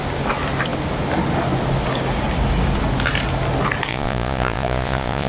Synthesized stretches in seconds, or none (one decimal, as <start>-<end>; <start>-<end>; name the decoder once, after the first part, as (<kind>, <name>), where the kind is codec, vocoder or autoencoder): 3.9-5.3 (vocoder, Vocos)